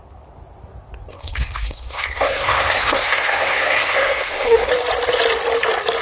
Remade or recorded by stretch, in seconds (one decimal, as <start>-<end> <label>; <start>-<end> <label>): 0.0-1.1 recorded; 1.1-4.7 remade; 4.7-6.0 recorded